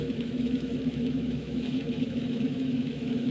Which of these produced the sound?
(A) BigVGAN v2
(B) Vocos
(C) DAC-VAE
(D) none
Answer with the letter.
C